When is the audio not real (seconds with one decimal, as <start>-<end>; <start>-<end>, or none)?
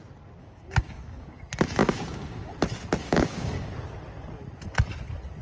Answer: 0.4-1.4; 1.8-2.5; 3.0-3.7